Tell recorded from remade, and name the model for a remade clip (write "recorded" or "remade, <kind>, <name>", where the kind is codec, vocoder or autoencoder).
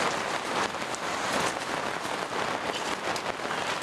recorded